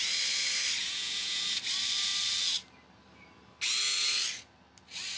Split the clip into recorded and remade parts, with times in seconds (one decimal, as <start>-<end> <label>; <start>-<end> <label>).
0.0-0.8 recorded; 0.8-1.6 remade; 1.6-5.2 recorded